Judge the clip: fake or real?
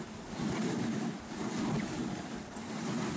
real